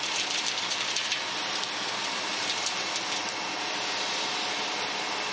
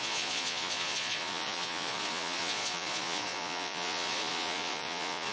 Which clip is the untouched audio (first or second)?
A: first